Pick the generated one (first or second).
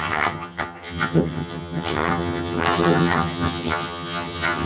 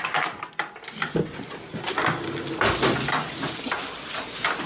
first